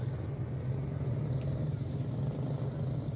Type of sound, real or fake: real